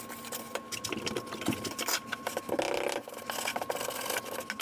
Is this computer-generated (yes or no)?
no